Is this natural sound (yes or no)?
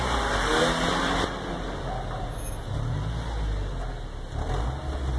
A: yes